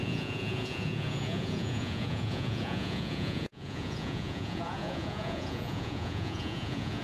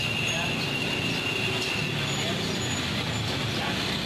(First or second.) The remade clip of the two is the first